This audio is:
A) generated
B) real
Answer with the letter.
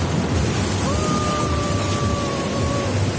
B